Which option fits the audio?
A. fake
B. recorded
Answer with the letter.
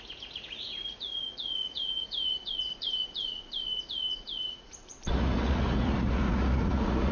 A